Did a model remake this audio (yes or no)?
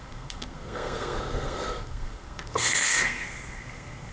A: yes